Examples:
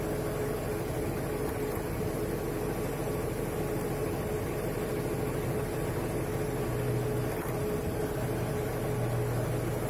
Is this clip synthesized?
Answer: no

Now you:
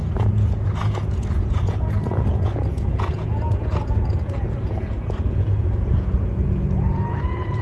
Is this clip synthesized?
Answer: yes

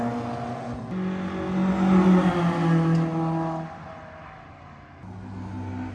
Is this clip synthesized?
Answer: no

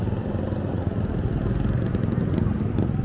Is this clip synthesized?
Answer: no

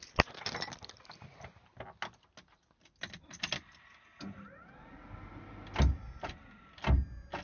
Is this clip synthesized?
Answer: no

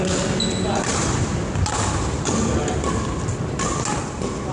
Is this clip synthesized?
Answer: no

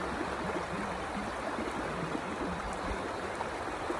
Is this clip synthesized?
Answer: no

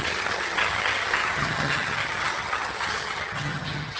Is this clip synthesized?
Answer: yes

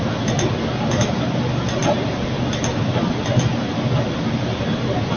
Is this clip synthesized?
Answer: no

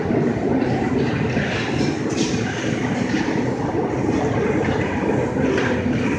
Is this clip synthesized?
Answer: no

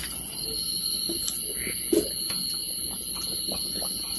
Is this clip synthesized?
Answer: no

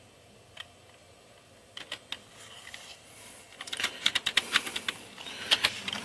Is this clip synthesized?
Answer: no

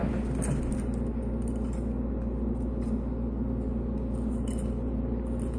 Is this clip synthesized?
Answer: no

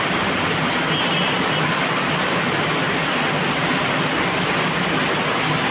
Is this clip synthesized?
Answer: no